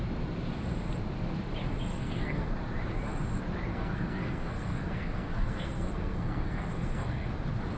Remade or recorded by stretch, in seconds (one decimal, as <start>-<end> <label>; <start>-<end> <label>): 0.0-1.9 recorded; 1.9-2.5 remade; 2.5-3.7 recorded; 3.7-7.3 remade; 7.3-7.8 recorded